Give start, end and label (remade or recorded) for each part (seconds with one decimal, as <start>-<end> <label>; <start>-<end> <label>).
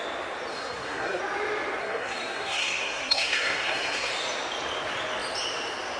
0.0-0.5 recorded; 0.5-1.2 remade; 1.2-1.8 recorded; 1.8-4.1 remade; 4.1-6.0 recorded